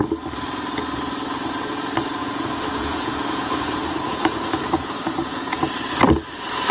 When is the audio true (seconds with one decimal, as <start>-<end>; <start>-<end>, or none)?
0.0-2.2; 5.7-6.7